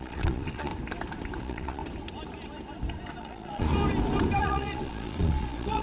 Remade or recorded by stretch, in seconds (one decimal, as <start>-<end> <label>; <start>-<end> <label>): 0.0-0.7 remade; 0.7-1.4 recorded; 1.4-1.8 remade; 1.8-3.2 recorded; 3.2-3.7 remade; 3.7-4.4 recorded; 4.4-5.8 remade

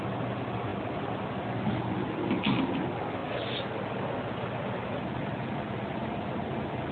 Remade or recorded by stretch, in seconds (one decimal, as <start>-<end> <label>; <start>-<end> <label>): 0.0-6.9 recorded

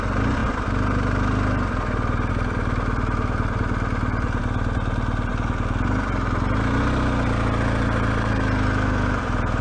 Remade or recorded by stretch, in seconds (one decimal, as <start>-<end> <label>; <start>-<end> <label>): 0.0-9.6 recorded

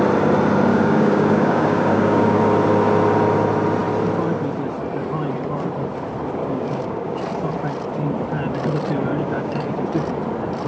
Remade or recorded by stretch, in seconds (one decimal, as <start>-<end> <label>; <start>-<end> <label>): 0.0-0.7 recorded; 0.7-2.4 remade; 2.4-6.4 recorded; 6.4-7.2 remade; 7.2-9.1 recorded; 9.1-9.7 remade; 9.7-10.7 recorded

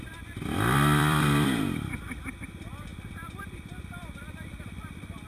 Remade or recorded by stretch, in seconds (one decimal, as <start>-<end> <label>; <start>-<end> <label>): 0.0-5.3 remade

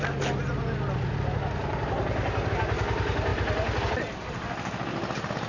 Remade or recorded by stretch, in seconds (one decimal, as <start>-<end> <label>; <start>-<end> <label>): 0.0-3.3 recorded; 3.3-3.8 remade; 3.8-5.5 recorded